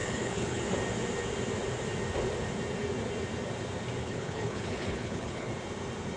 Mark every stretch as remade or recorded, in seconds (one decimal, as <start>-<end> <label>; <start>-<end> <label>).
0.0-0.6 remade; 0.6-4.0 recorded; 4.0-5.5 remade; 5.5-6.2 recorded